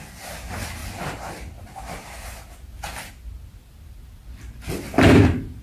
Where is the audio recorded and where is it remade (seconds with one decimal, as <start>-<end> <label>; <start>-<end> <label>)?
0.0-5.6 recorded